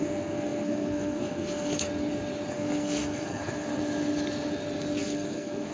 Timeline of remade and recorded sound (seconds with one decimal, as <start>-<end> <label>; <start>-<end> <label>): 0.0-1.9 remade; 1.9-2.5 recorded; 2.5-3.8 remade; 3.8-5.0 recorded; 5.0-5.7 remade